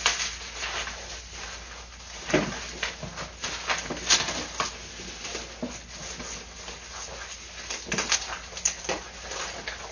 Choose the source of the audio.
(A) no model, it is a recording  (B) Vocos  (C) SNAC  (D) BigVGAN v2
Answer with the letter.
A